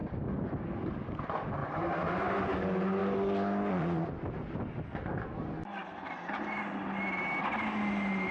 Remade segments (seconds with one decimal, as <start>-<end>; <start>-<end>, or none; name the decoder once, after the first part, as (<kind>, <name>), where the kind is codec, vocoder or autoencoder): 1.6-2.3 (vocoder, BigVGAN v2)